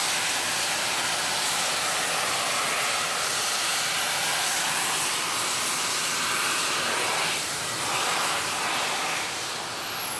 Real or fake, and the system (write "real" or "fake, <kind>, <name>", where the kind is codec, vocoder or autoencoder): real